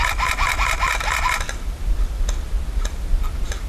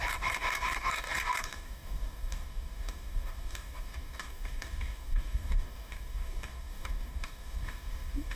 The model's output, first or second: second